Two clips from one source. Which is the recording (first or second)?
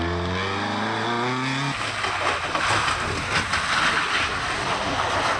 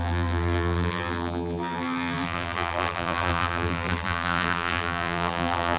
first